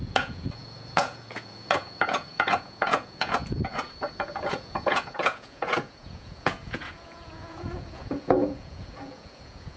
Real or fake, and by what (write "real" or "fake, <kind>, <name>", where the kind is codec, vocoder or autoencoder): fake, vocoder, Vocos